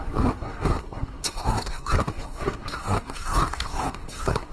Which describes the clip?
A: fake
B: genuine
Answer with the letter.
A